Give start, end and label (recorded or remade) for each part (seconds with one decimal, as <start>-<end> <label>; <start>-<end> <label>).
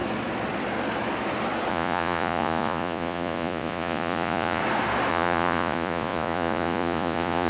0.0-1.7 recorded; 1.7-4.6 remade; 4.6-5.1 recorded; 5.1-7.5 remade